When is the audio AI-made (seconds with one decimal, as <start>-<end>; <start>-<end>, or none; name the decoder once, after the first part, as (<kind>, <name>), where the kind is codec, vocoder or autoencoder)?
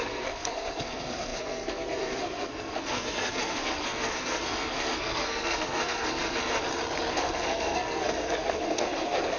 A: 0.0-6.4 (codec, SNAC); 7.1-9.4